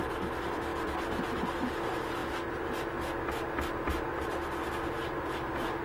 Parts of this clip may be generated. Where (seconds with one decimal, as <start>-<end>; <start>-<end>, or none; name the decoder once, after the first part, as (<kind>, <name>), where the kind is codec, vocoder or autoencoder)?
4.1-4.7 (vocoder, BigVGAN v2)